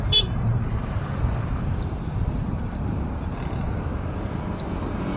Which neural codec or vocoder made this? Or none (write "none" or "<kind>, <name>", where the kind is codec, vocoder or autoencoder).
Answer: vocoder, BigVGAN v2